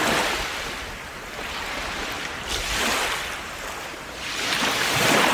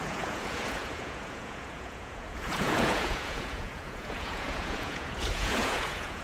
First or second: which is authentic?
first